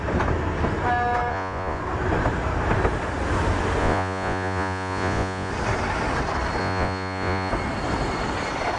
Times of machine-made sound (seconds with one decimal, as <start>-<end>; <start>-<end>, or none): 1.3-1.8; 3.8-5.5; 6.6-7.5